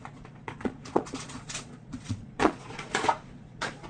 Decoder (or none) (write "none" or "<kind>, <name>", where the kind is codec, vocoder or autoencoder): vocoder, Vocos